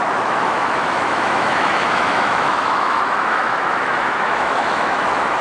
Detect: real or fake fake